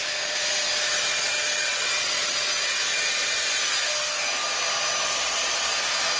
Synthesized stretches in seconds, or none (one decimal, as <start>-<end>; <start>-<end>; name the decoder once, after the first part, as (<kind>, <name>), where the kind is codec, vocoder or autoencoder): 1.7-2.4 (vocoder, WaveNeXt)